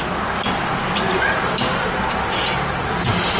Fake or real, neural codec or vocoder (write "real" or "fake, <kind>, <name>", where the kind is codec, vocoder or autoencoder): real